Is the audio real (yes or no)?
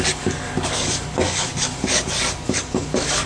no